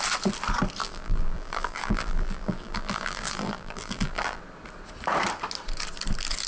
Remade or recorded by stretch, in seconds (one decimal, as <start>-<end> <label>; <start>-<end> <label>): 0.0-0.8 recorded; 0.8-4.4 remade; 4.4-6.5 recorded